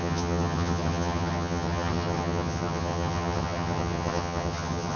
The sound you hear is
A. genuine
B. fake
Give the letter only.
B